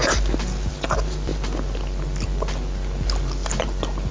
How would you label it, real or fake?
real